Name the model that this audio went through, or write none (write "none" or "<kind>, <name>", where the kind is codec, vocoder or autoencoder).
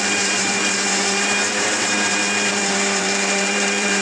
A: vocoder, BigVGAN v2